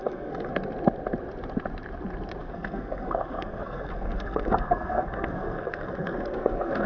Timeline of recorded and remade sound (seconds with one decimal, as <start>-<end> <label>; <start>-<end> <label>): 0.0-0.5 remade; 0.5-2.4 recorded; 2.4-6.9 remade